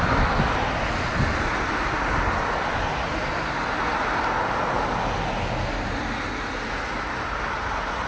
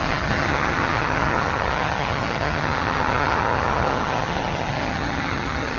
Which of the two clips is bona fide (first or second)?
first